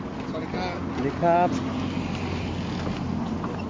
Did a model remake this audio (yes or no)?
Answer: no